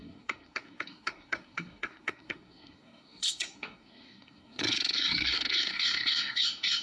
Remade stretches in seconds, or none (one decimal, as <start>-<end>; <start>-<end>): 0.0-6.8